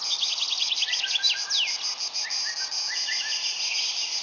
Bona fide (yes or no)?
yes